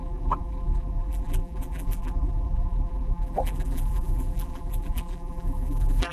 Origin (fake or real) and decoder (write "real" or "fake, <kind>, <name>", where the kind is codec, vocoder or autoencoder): fake, vocoder, BigVGAN v2